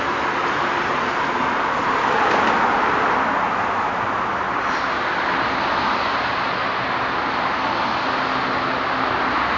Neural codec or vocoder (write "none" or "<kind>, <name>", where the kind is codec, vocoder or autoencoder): none